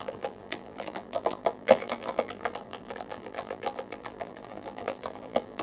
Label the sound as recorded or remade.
remade